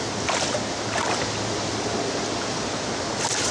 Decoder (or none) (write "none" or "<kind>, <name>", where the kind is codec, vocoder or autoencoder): none